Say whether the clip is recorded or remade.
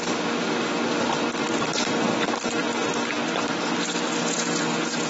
recorded